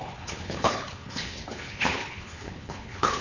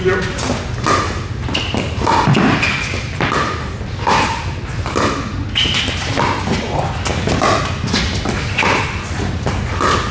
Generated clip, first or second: first